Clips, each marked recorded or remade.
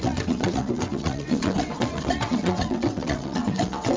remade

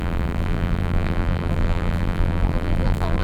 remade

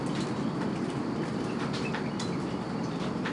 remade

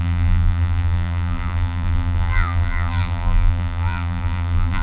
remade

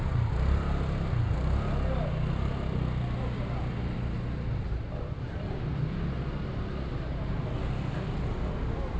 recorded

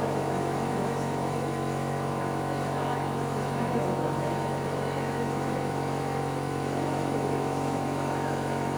remade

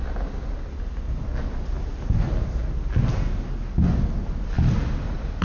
recorded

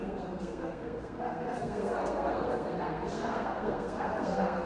remade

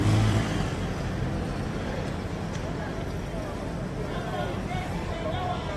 remade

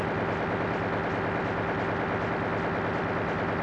recorded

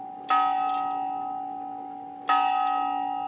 recorded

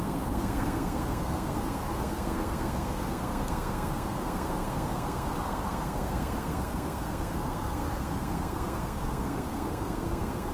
remade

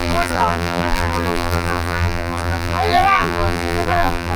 remade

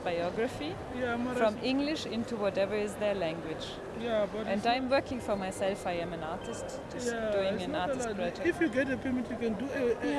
recorded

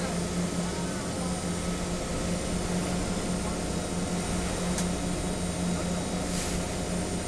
recorded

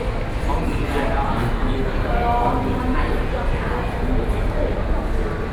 recorded